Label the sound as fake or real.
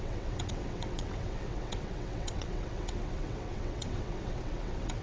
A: fake